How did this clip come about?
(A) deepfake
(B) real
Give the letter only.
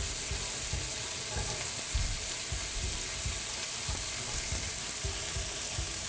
B